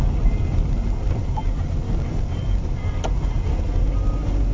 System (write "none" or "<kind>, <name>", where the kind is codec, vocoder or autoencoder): none